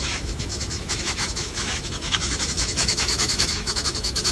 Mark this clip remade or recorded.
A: remade